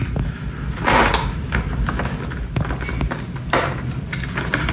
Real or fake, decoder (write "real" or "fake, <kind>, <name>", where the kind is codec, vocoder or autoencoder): real